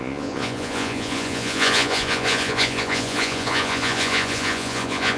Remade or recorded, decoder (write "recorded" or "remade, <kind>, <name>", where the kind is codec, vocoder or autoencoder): remade, vocoder, Vocos